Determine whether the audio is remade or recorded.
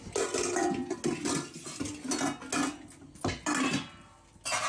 recorded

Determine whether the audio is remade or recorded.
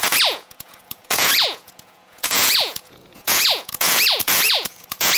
remade